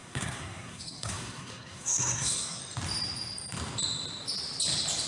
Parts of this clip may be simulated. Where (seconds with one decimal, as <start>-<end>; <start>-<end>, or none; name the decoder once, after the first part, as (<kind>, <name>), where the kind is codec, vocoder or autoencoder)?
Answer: 0.0-2.6 (codec, SNAC)